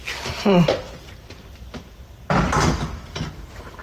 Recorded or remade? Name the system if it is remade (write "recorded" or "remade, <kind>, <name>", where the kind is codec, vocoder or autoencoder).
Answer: recorded